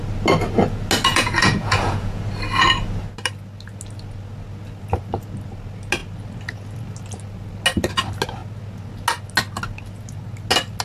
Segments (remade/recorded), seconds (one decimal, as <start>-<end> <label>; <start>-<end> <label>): 0.0-1.1 recorded; 1.1-2.2 remade; 2.2-10.8 recorded